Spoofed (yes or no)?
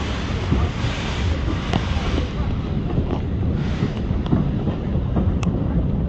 no